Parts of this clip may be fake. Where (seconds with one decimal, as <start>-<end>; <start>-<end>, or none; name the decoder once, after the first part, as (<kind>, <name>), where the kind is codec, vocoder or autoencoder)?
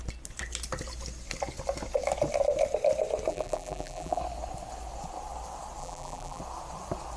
3.3-4.2 (vocoder, BigVGAN v2); 5.8-6.4